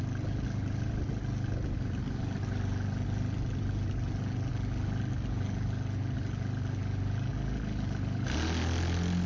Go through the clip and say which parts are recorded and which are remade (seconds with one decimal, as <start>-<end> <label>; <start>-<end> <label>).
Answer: 0.0-9.3 recorded